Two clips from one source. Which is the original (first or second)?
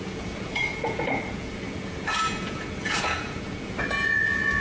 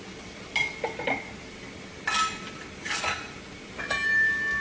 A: second